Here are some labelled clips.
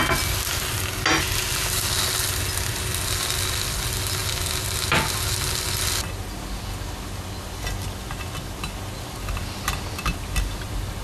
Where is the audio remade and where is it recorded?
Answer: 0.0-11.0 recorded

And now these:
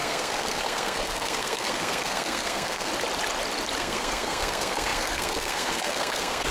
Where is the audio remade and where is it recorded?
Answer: 0.0-2.9 remade; 2.9-3.8 recorded; 3.8-6.5 remade

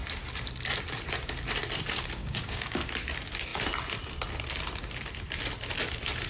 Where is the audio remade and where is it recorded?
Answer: 0.0-2.2 recorded; 2.2-2.9 remade; 2.9-6.3 recorded

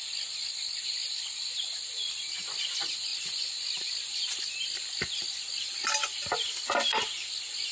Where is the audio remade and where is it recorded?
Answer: 0.0-7.7 recorded

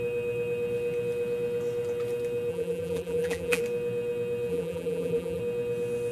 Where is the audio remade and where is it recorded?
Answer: 0.0-2.5 recorded; 2.5-3.6 remade; 3.6-4.5 recorded; 4.5-5.4 remade; 5.4-6.1 recorded

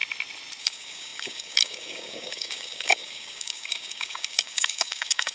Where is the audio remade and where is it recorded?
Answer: 0.0-0.6 recorded; 0.6-5.3 remade

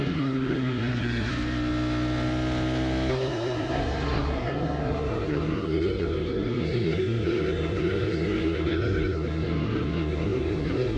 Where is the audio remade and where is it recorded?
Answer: 0.0-1.3 remade; 1.3-3.1 recorded; 3.1-11.0 remade